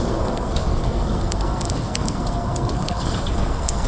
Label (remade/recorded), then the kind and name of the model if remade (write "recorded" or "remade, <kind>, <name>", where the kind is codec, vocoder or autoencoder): remade, codec, SNAC